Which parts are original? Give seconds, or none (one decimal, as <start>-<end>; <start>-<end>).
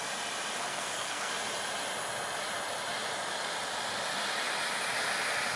0.0-0.6; 1.3-5.6